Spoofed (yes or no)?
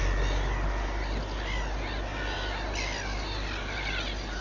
no